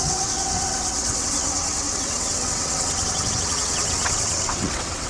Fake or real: fake